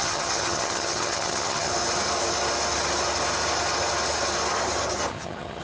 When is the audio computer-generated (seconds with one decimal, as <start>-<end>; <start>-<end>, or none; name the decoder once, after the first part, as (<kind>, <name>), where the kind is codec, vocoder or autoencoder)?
0.0-1.7 (vocoder, HiFi-GAN); 5.1-5.6